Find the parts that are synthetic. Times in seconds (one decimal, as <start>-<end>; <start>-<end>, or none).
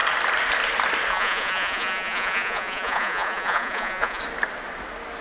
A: 1.1-4.2